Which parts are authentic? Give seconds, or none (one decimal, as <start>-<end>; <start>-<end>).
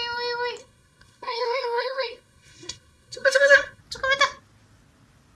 0.0-0.6; 3.8-5.3